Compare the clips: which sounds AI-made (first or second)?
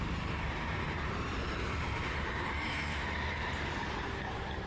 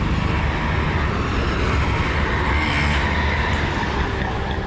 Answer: first